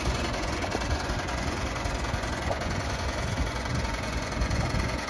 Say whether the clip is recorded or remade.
remade